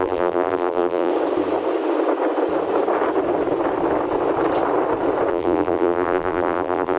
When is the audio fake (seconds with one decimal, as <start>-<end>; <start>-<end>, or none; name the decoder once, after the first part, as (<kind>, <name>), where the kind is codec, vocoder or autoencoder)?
0.0-1.1 (vocoder, BigVGAN v2); 5.3-7.0

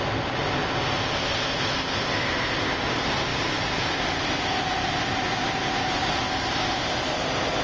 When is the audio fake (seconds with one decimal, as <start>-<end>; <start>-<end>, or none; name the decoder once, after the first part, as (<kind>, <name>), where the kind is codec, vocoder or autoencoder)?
3.3-4.2 (vocoder, BigVGAN v2)

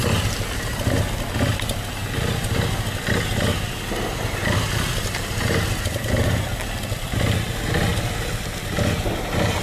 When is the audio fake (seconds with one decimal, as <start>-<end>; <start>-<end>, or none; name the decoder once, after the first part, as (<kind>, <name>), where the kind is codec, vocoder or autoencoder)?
7.9-8.7 (vocoder, BigVGAN v2)

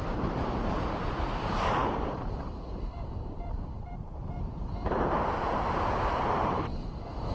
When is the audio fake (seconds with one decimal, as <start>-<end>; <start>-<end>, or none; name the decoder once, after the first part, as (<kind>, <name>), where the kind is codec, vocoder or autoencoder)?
0.0-6.7 (vocoder, BigVGAN v2)

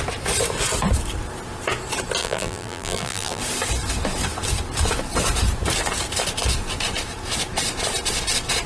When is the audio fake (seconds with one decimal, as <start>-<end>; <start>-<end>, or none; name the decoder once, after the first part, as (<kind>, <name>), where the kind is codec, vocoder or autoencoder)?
2.2-3.4 (vocoder, BigVGAN v2)

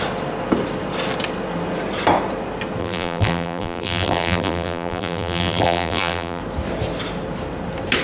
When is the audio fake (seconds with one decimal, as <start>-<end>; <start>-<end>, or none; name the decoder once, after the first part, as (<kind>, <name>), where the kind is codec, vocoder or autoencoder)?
2.8-6.4 (vocoder, BigVGAN v2)